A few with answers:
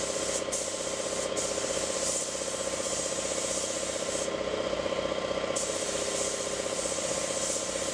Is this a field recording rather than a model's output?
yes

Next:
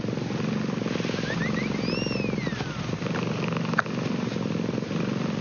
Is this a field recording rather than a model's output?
yes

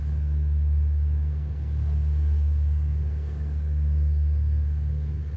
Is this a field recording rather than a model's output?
no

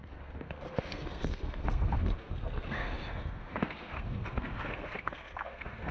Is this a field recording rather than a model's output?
no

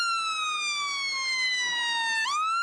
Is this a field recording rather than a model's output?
yes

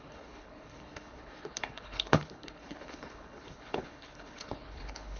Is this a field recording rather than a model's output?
no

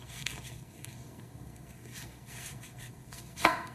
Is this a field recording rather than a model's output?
no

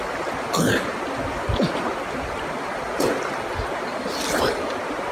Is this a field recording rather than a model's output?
yes